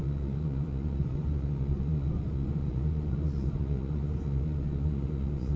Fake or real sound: fake